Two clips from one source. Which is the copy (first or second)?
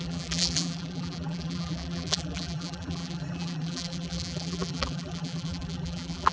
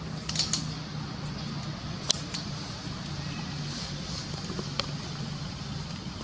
first